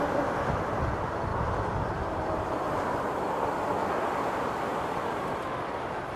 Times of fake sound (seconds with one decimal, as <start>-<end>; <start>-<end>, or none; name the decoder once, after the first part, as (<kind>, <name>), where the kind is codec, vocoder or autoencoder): 1.3-3.3 (vocoder, BigVGAN v2); 4.7-5.3